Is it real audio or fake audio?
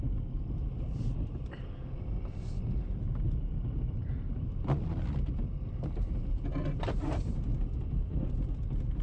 real